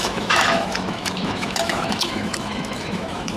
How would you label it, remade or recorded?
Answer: remade